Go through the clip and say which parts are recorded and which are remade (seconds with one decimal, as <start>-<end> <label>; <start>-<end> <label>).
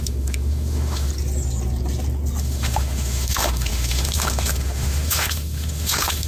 0.0-1.1 remade; 1.1-2.4 recorded; 2.4-6.3 remade